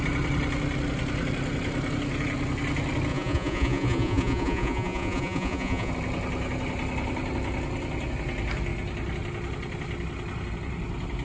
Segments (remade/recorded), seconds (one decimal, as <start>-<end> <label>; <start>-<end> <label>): 0.0-3.1 recorded; 3.1-5.9 remade; 5.9-11.2 recorded